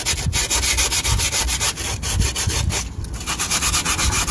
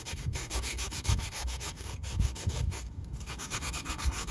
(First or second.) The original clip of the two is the first